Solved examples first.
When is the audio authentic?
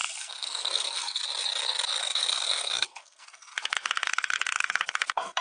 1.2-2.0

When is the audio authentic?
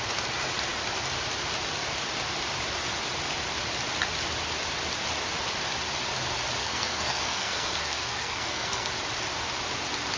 0.0-6.6; 8.9-10.2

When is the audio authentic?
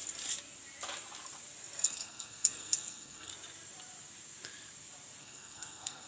0.0-1.8; 3.3-5.2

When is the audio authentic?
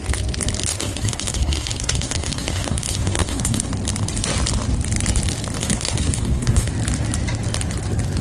0.0-0.7; 3.7-5.6; 6.7-8.2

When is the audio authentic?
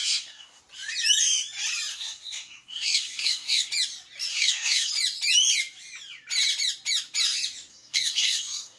0.6-1.9; 3.7-4.3; 4.9-7.7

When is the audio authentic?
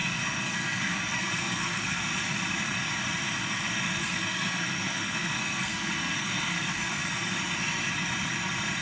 2.1-3.4; 7.0-8.8